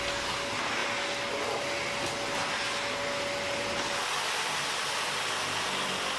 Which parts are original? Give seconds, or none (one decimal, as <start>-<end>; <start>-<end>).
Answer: 0.0-6.2